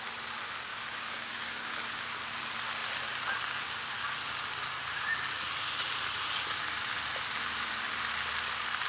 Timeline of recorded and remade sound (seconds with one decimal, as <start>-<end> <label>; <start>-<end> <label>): 0.0-0.7 recorded; 0.7-2.2 remade; 2.2-8.9 recorded